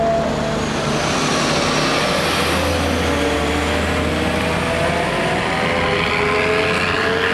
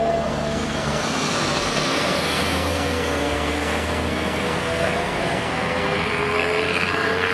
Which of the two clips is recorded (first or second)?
first